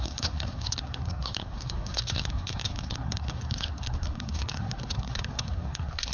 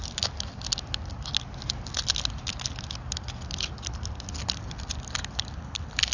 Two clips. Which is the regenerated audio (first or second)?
first